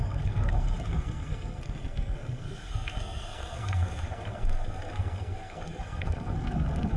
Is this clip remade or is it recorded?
remade